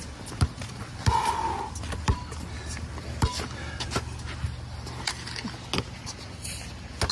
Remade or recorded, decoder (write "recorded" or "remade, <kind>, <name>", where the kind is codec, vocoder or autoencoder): recorded